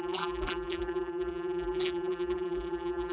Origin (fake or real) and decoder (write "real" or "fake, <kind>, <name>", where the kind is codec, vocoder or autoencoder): fake, vocoder, BigVGAN v2